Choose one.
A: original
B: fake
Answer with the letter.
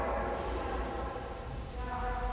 A